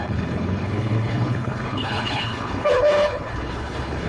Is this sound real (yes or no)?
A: no